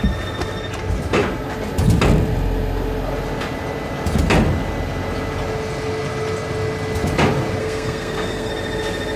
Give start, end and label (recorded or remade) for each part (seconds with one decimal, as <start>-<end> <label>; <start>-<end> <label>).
0.0-7.6 recorded; 7.6-8.5 remade; 8.5-9.2 recorded